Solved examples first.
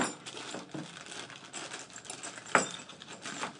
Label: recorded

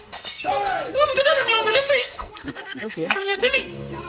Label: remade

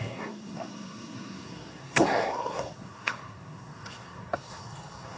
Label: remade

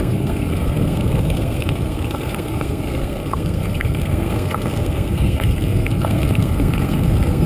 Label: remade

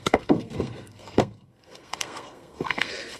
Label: remade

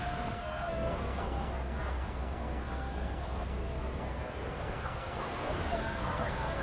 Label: remade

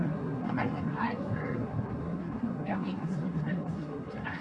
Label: remade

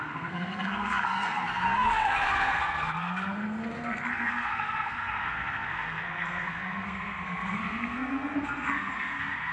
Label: remade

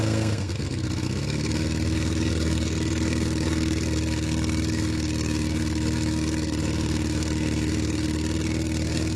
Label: remade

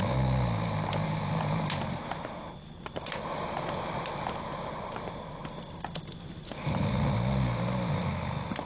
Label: recorded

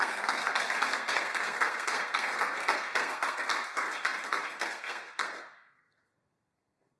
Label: remade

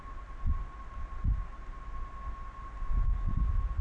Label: recorded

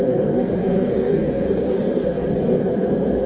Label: remade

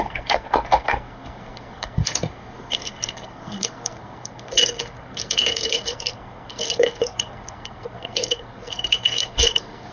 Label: remade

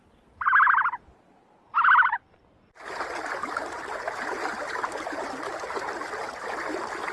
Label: recorded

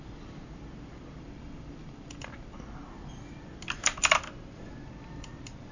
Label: recorded